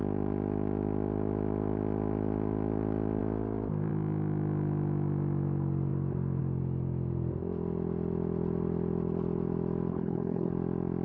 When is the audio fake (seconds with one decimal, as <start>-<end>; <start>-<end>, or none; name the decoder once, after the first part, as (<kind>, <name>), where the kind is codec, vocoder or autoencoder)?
9.9-10.5 (codec, HILCodec)